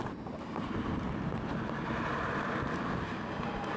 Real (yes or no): yes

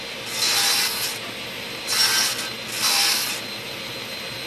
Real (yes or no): yes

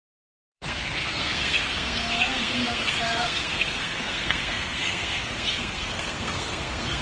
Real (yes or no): no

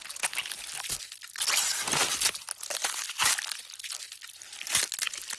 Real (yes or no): yes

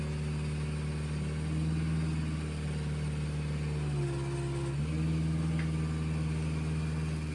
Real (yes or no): yes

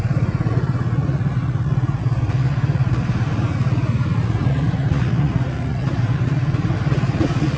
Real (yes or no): no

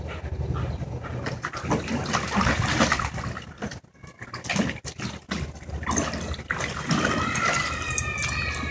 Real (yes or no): yes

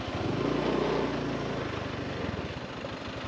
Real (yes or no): yes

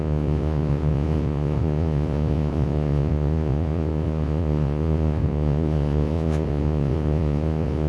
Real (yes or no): no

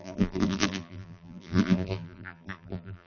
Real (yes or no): no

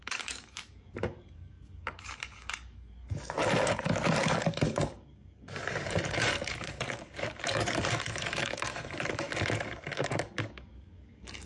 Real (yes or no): no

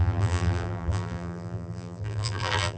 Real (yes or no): no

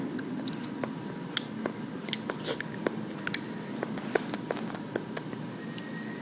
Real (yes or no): yes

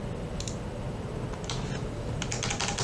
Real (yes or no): yes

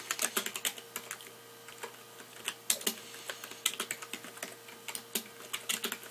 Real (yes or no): yes